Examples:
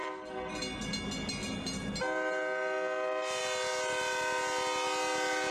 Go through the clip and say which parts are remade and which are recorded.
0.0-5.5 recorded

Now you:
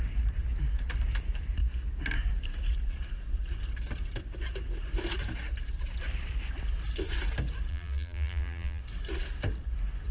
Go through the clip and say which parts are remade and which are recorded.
0.0-7.7 recorded; 7.7-8.8 remade; 8.8-10.1 recorded